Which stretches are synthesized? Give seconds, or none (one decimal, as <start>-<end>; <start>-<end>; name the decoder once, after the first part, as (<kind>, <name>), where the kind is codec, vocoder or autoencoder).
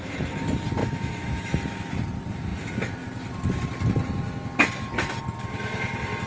0.8-1.9 (autoencoder, DAC-VAE)